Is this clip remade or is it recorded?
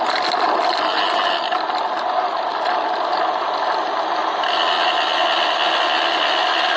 recorded